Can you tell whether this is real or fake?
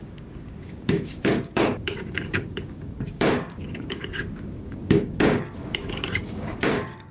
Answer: fake